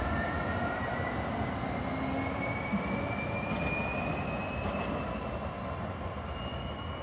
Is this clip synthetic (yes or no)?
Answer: no